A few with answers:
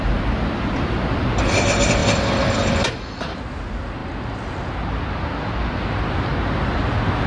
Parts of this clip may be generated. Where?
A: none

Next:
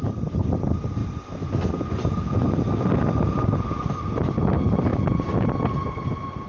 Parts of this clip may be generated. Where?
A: none

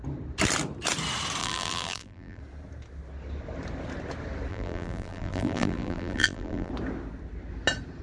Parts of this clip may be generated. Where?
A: 1.4-2.4 (vocoder, BigVGAN v2); 4.5-6.7

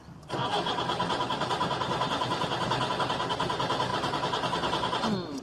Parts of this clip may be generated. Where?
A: none

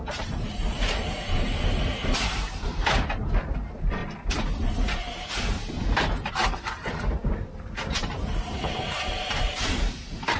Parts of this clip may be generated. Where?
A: 0.0-4.0 (vocoder, BigVGAN v2); 6.3-10.4